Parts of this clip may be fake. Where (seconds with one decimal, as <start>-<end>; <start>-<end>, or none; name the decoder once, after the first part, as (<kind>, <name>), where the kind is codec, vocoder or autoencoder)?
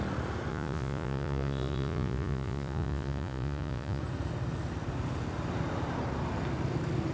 0.5-4.0 (vocoder, Vocos)